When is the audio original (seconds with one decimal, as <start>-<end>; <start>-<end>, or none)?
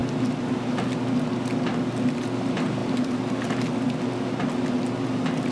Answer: 0.0-5.5